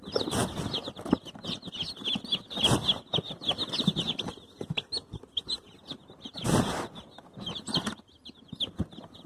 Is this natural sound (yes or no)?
yes